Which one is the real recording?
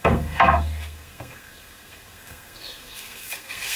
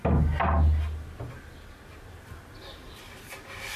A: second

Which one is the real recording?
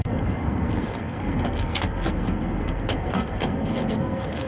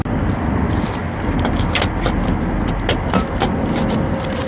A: second